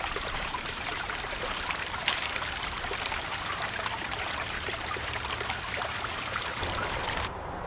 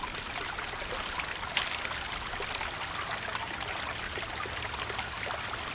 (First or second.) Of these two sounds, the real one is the second